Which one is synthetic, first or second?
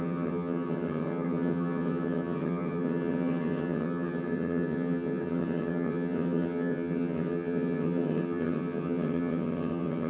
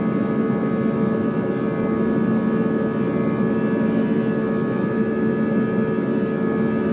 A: first